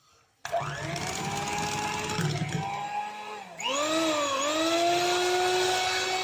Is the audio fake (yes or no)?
no